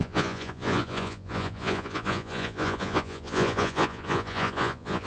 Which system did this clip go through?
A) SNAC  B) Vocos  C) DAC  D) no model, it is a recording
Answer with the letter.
B